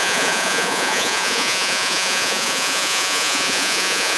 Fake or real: fake